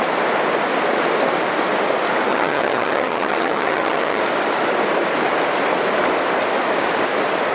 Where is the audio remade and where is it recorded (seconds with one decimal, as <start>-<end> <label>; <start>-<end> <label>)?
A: 0.0-2.3 recorded; 2.3-4.2 remade; 4.2-7.5 recorded